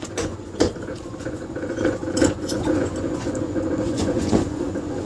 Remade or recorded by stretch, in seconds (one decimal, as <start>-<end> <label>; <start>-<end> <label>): 0.0-5.1 remade